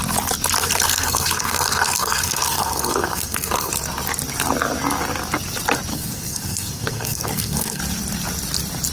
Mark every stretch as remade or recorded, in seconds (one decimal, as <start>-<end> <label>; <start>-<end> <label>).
0.0-0.6 recorded; 0.6-3.7 remade; 3.7-5.9 recorded; 5.9-7.8 remade; 7.8-8.9 recorded